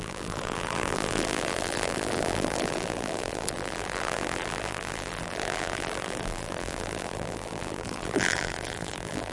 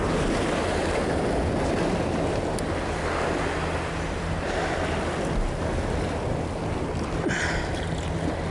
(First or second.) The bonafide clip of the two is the second